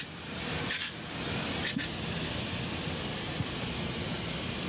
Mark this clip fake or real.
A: fake